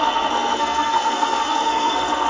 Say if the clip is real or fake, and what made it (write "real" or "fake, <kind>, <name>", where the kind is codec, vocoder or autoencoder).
fake, codec, SNAC